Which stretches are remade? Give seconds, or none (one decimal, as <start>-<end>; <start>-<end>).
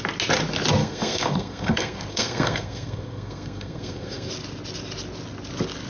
0.8-4.3